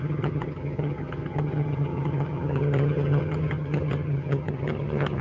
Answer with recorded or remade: remade